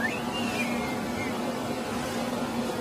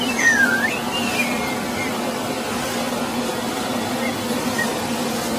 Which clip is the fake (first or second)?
second